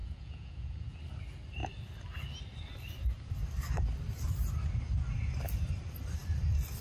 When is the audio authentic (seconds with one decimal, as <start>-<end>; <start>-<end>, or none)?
1.0-6.8

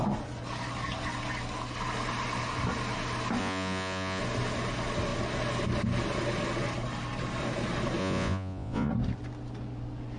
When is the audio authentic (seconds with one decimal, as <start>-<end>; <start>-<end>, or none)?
0.0-3.4; 4.2-8.0; 8.9-10.2

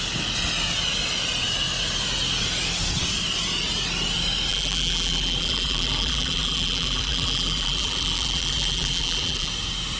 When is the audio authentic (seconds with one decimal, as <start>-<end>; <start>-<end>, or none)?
0.0-4.5; 9.5-10.0